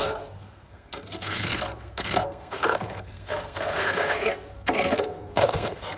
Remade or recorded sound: remade